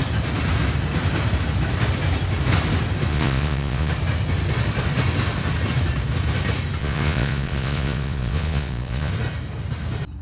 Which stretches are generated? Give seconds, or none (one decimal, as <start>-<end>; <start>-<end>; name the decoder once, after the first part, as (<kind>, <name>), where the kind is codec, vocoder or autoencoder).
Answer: 3.1-3.9 (vocoder, Vocos); 6.8-9.1